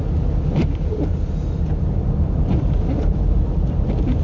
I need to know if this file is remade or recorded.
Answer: recorded